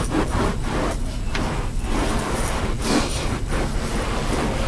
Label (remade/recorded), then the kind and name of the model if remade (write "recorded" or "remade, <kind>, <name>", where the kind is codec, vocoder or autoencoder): remade, vocoder, BigVGAN v2